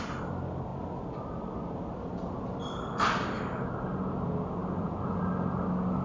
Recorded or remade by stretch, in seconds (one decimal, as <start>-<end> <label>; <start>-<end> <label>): 0.0-6.0 recorded